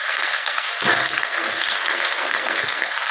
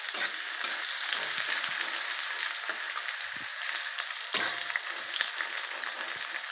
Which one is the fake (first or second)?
first